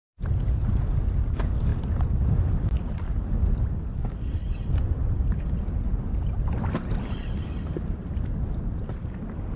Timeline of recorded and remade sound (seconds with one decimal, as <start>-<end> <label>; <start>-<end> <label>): 0.0-9.6 recorded